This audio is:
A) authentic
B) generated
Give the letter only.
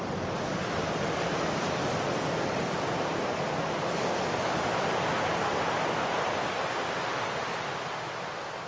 A